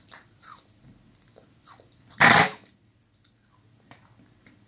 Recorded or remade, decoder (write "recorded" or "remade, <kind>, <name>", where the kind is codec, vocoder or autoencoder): recorded